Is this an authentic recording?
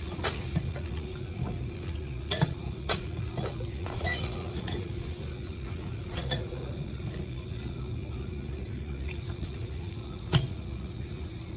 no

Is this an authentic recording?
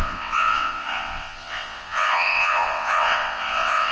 no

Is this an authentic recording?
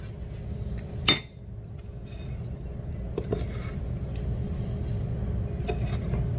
yes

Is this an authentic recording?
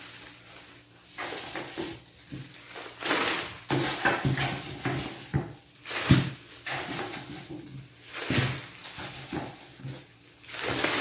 yes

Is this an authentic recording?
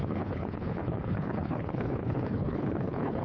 no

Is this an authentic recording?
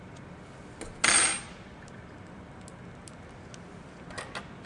yes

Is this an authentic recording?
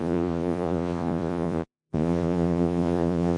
no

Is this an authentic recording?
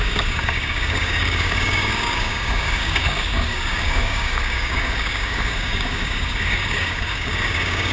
no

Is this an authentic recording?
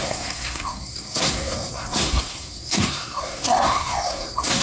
no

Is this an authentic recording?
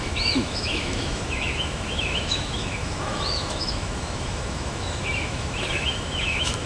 no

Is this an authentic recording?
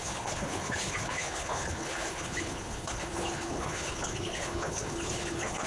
no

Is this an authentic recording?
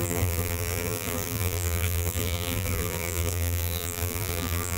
no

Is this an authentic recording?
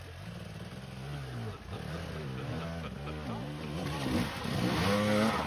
yes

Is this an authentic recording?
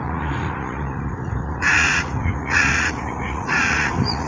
no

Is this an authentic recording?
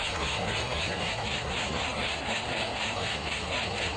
no